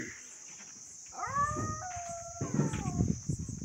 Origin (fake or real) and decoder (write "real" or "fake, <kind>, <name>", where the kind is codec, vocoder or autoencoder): real